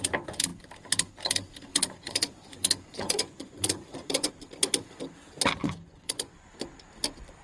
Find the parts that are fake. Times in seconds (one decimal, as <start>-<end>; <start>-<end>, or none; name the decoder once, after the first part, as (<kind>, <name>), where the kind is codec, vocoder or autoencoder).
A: 1.7-4.3 (vocoder, Vocos); 5.6-6.5